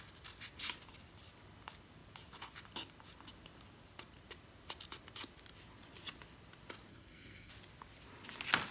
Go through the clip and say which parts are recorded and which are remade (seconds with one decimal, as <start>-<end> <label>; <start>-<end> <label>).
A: 0.0-6.9 recorded; 6.9-7.5 remade; 7.5-8.7 recorded

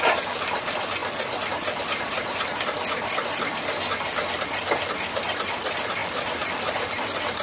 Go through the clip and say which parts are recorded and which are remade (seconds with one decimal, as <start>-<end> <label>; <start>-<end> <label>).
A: 0.0-1.0 remade; 1.0-1.5 recorded; 1.5-2.5 remade; 2.5-4.9 recorded; 4.9-7.4 remade

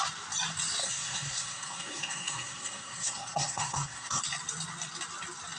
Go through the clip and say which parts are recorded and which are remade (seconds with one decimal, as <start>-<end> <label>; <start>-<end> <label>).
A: 0.0-0.8 recorded; 0.8-4.2 remade; 4.2-5.6 recorded

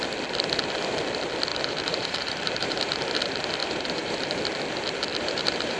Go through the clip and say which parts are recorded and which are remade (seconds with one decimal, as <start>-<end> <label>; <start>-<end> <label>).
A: 0.0-1.5 recorded; 1.5-3.2 remade; 3.2-3.6 recorded; 3.6-4.4 remade; 4.4-5.1 recorded; 5.1-5.8 remade

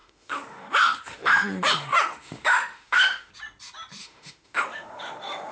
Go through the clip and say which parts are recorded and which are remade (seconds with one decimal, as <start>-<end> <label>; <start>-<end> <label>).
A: 0.0-3.3 remade; 3.3-4.0 recorded; 4.0-5.5 remade

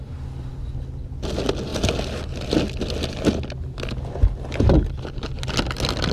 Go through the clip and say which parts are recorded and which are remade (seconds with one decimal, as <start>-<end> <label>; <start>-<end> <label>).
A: 0.0-6.1 recorded

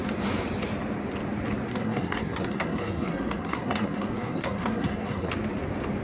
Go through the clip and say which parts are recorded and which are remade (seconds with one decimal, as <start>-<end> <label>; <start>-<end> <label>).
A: 0.0-1.7 recorded; 1.7-5.3 remade; 5.3-6.0 recorded